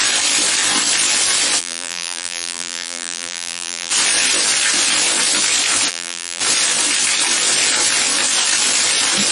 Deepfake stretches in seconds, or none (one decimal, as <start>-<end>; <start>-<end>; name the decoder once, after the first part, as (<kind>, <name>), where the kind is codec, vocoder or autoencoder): 1.6-3.9 (vocoder, BigVGAN v2); 5.9-6.4